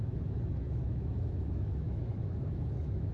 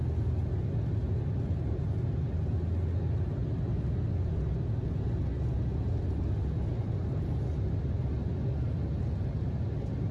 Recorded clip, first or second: second